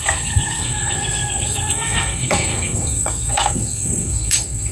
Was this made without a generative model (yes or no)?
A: no